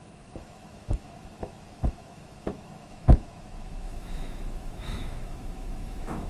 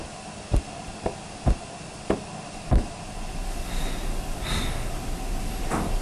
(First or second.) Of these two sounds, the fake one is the first